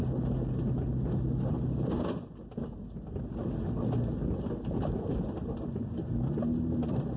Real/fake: real